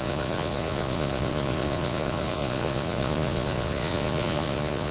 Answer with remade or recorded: remade